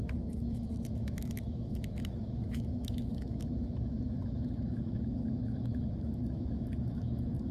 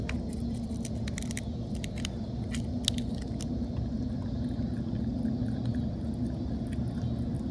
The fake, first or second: first